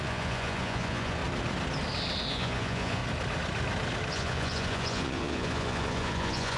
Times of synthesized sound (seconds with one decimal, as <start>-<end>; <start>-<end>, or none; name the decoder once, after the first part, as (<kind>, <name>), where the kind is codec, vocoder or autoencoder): 0.0-1.2 (vocoder, Vocos); 2.3-3.0; 4.1-6.6

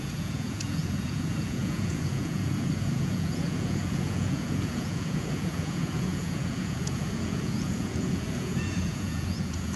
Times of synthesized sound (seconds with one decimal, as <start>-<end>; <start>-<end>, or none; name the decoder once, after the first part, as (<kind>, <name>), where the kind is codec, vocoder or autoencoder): 0.0-9.8 (vocoder, Vocos)